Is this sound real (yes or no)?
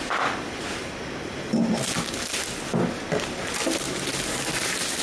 yes